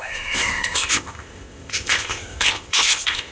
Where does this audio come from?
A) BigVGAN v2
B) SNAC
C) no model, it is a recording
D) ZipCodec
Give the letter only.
D